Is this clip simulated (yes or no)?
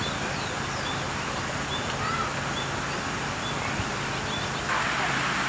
no